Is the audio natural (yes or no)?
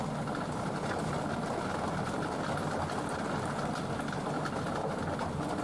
yes